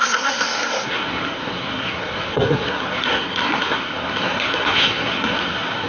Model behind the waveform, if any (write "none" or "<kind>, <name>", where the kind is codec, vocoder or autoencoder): codec, SNAC